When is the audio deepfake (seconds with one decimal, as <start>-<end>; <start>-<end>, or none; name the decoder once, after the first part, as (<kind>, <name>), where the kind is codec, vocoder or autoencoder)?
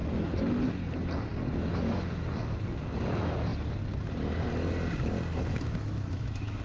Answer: 1.7-2.6 (autoencoder, DAC-VAE); 5.5-6.6